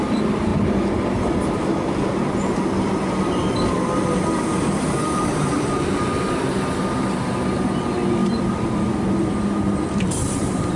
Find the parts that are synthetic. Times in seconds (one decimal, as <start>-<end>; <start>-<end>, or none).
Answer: 0.0-0.5; 3.2-10.8